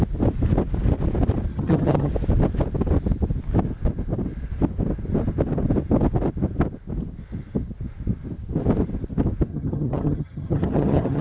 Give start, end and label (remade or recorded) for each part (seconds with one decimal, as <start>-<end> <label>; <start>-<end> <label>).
0.0-1.5 recorded; 1.5-2.1 remade; 2.1-9.5 recorded; 9.5-11.2 remade